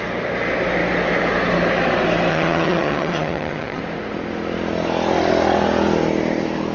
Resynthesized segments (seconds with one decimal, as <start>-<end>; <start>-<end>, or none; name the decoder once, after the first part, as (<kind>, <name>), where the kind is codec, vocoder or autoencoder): 2.3-3.8 (vocoder, HiFi-GAN)